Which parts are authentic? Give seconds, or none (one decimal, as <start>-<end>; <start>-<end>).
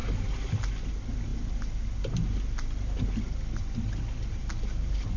0.0-5.2